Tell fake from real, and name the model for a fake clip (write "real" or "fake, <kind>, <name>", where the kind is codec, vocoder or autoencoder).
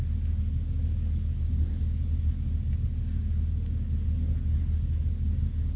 real